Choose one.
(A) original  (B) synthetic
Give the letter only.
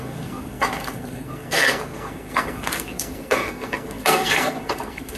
B